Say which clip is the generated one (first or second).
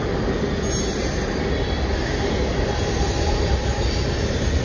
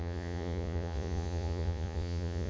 second